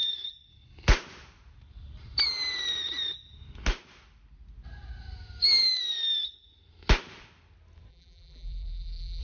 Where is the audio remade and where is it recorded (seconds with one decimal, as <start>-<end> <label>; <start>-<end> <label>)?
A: 0.0-7.9 recorded; 7.9-9.2 remade